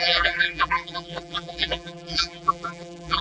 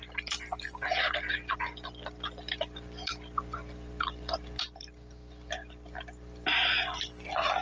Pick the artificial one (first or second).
first